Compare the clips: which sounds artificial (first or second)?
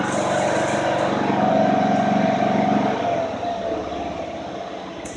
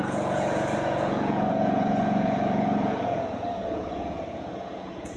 second